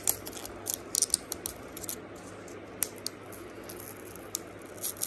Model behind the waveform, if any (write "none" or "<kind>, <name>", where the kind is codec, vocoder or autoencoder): none